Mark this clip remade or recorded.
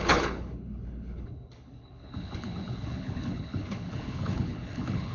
remade